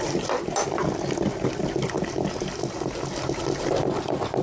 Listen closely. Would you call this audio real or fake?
real